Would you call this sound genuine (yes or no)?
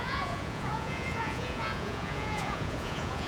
no